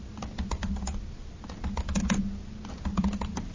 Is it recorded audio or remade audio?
recorded